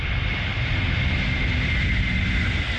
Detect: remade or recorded recorded